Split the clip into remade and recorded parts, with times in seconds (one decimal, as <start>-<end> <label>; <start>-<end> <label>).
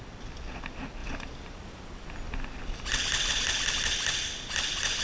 0.0-5.0 recorded